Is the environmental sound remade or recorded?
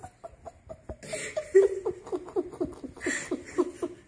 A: recorded